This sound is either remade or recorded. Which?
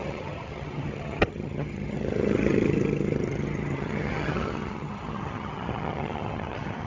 remade